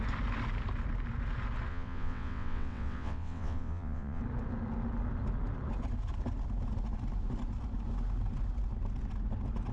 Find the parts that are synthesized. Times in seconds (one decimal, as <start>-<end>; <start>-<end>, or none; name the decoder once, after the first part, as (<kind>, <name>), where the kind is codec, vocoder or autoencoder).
1.7-4.2 (vocoder, WaveNeXt)